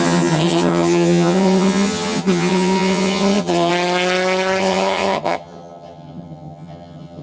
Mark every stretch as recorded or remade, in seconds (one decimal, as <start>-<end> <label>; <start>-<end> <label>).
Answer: 0.0-3.7 remade; 3.7-4.6 recorded; 4.6-7.2 remade